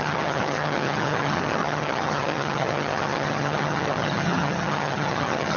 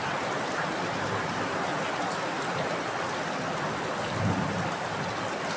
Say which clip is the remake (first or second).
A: first